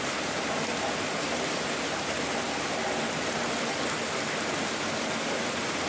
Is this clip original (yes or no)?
yes